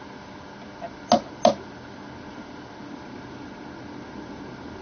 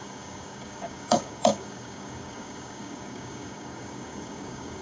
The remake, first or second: second